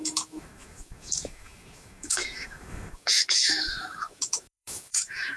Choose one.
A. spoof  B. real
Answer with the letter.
A